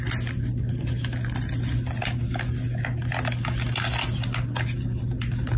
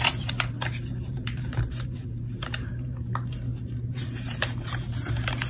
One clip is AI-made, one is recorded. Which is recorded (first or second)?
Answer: first